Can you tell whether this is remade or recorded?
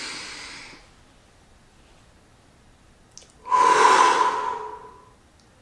recorded